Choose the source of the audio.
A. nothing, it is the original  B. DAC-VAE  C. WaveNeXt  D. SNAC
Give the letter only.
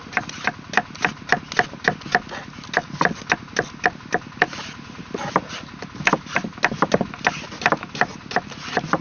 A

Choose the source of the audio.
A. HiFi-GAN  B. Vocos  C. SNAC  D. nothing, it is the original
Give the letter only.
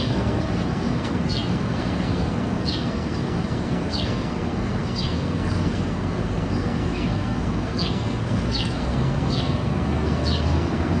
C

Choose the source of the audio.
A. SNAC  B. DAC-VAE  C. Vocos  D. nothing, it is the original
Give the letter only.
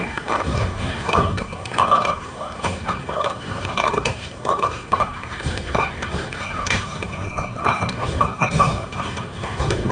A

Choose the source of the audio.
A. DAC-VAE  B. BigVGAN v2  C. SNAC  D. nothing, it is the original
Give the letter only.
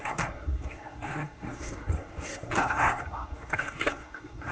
C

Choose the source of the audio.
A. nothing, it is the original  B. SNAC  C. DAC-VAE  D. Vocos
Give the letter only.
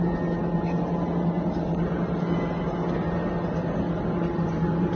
A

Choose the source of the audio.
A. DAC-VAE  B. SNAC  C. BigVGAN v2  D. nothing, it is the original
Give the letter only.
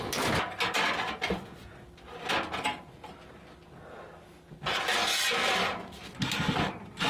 D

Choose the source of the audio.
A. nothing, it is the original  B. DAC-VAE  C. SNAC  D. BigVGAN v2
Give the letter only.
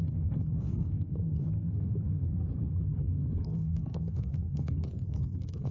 C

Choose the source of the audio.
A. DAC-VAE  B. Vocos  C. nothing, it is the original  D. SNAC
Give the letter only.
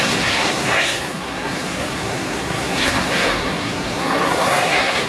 D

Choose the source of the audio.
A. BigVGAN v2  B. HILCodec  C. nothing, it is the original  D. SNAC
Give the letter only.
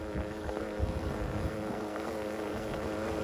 D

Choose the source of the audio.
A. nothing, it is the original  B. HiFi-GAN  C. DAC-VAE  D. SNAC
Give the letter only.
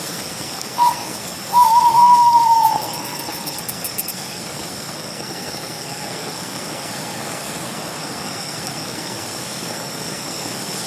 D